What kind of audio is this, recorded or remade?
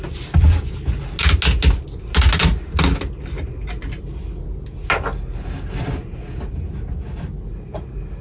recorded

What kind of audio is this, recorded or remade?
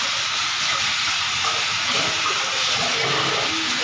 recorded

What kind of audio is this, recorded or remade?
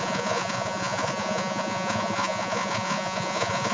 remade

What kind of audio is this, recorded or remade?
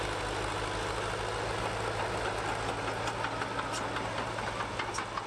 recorded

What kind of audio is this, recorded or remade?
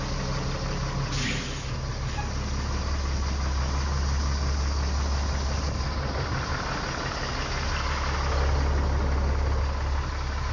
recorded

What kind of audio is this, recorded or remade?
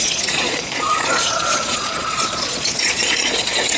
remade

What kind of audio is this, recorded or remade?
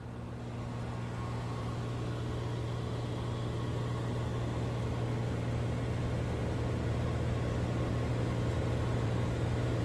recorded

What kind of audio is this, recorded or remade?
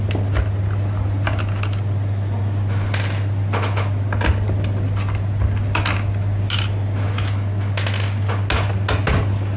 recorded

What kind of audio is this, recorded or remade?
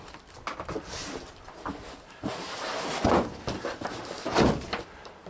recorded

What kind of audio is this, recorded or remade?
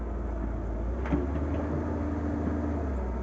recorded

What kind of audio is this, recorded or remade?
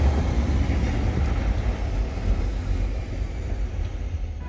recorded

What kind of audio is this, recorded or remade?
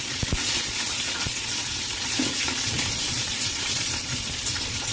remade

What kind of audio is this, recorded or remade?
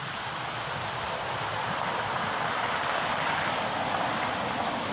recorded